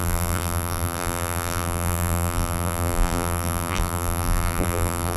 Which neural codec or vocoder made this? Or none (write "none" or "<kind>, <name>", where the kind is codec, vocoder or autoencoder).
vocoder, BigVGAN v2